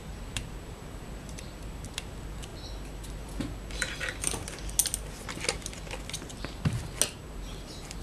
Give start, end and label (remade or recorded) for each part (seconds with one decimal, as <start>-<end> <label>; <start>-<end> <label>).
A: 0.0-2.5 remade; 2.5-7.2 recorded; 7.2-8.0 remade